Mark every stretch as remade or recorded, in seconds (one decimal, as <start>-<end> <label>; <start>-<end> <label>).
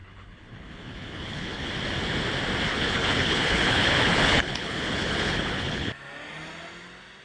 0.0-1.7 remade; 1.7-2.7 recorded; 2.7-5.9 remade; 5.9-7.2 recorded